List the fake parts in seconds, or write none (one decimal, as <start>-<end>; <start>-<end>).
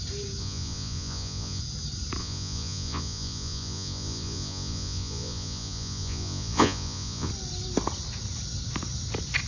0.4-1.6; 2.2-7.3